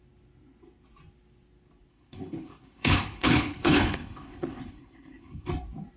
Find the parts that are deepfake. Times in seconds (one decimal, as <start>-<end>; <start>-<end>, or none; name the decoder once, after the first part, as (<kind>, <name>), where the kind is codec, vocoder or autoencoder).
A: 1.9-5.5 (codec, HILCodec)